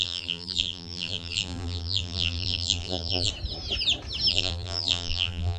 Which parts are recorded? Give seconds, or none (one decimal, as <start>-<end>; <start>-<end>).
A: 3.3-4.3